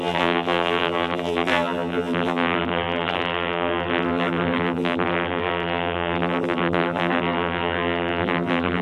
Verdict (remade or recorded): remade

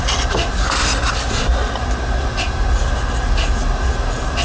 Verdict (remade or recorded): recorded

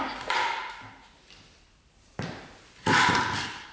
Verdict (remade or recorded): remade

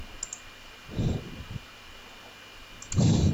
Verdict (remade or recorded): recorded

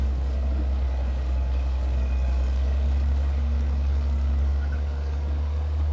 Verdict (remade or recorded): remade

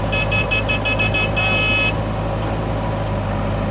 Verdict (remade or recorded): recorded